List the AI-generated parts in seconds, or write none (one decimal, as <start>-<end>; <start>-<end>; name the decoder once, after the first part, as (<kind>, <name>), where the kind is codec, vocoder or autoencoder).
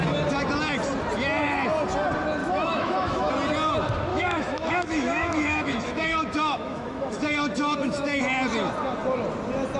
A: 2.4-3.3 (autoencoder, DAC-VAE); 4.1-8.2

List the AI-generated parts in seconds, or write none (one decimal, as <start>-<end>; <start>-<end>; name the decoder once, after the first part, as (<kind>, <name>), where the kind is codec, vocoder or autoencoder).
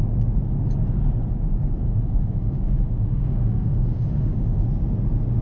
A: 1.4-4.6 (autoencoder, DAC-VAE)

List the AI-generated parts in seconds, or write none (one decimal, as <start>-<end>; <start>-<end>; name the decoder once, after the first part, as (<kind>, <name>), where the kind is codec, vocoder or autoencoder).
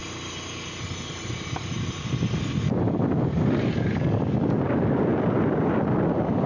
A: none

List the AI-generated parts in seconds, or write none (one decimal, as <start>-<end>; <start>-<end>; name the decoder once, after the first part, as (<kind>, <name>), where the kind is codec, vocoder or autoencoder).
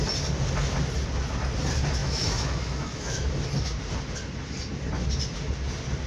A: 2.0-3.3 (autoencoder, DAC-VAE)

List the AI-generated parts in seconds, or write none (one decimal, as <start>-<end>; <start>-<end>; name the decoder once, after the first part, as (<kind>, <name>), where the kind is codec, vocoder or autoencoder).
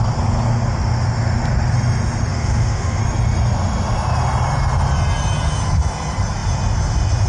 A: 2.3-3.0 (autoencoder, DAC-VAE)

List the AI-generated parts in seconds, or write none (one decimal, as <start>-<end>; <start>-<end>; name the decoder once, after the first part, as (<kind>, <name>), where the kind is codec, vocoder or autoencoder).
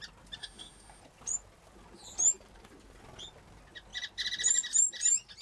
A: 0.4-1.0 (autoencoder, DAC-VAE)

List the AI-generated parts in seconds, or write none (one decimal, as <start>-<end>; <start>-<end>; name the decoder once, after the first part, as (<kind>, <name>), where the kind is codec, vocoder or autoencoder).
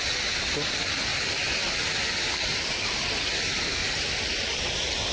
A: none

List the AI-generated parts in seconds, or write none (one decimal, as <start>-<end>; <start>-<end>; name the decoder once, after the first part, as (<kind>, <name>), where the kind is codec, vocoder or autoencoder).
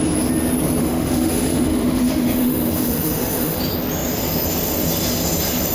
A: 0.8-3.6 (autoencoder, DAC-VAE)